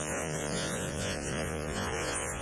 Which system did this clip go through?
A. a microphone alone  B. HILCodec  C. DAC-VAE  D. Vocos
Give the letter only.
D